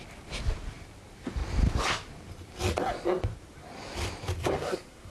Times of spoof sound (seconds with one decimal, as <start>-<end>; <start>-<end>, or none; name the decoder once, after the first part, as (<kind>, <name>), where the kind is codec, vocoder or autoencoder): 4.4-5.1 (codec, SNAC)